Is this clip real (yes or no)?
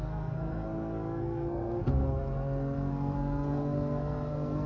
no